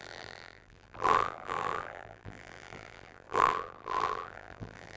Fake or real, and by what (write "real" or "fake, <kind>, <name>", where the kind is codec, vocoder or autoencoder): fake, vocoder, BigVGAN v2